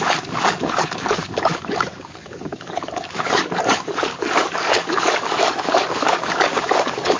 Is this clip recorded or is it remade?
remade